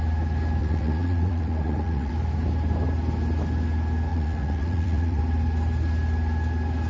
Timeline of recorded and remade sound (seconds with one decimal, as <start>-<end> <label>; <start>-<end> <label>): 0.0-0.6 recorded; 0.6-2.1 remade; 2.1-4.1 recorded; 4.1-5.2 remade; 5.2-6.9 recorded